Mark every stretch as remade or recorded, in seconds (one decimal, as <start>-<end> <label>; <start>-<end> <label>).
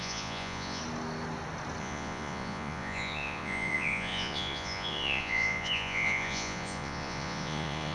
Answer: 0.0-0.8 remade; 0.8-1.8 recorded; 1.8-7.9 remade